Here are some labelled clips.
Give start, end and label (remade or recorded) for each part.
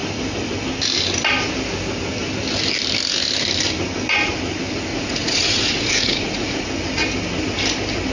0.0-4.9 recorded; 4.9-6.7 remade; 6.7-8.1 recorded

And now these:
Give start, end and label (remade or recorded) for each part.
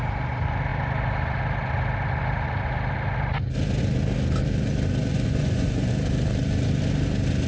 0.0-5.1 recorded; 5.1-5.9 remade; 5.9-7.5 recorded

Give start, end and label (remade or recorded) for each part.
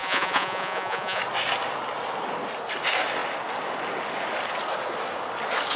0.0-1.2 remade; 1.2-5.8 recorded